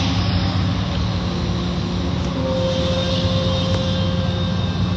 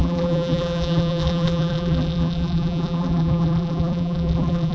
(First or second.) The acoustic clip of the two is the first